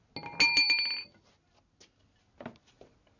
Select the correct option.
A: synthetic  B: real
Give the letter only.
B